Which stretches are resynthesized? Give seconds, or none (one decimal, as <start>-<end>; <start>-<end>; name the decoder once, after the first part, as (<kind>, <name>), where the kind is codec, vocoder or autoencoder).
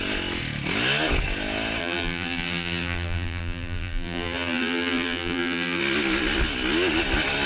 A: 1.8-5.8 (vocoder, BigVGAN v2)